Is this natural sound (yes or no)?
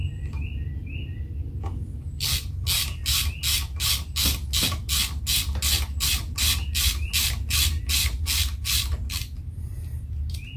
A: yes